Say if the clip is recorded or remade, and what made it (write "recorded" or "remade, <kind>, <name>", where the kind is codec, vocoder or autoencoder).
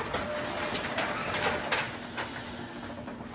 recorded